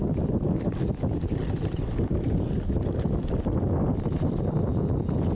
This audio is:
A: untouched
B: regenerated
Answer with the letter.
A